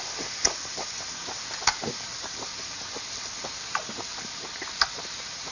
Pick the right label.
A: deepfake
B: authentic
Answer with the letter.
B